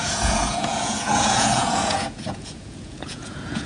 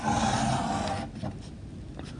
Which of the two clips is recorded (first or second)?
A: second